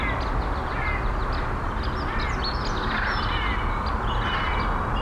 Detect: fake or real real